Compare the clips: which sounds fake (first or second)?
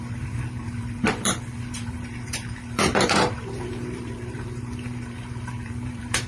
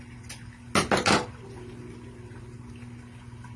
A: first